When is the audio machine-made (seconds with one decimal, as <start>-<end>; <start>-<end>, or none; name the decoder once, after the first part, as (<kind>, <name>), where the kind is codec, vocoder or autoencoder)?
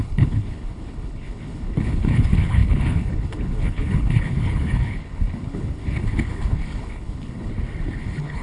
0.0-7.5 (codec, HILCodec); 8.0-8.4